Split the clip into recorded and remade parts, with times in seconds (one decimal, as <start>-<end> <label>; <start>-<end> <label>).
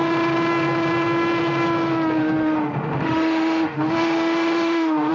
0.0-2.2 recorded; 2.2-5.1 remade